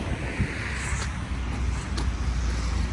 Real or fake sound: real